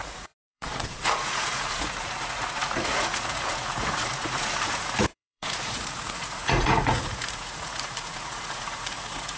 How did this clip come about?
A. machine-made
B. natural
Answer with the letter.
A